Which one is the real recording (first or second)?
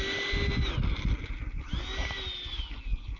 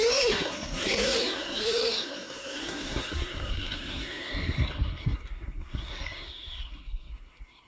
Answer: first